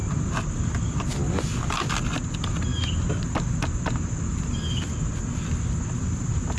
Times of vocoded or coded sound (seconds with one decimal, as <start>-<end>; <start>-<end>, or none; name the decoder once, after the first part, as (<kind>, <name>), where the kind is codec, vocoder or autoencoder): none